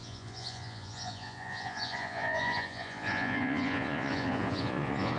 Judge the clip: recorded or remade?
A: remade